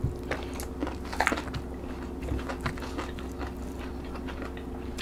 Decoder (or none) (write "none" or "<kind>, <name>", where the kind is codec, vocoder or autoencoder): none